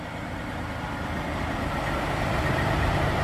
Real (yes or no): yes